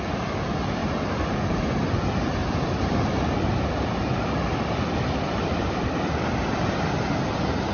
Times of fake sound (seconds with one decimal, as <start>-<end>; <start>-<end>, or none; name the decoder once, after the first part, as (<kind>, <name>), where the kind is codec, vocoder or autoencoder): 0.8-1.4 (vocoder, BigVGAN v2); 2.4-6.7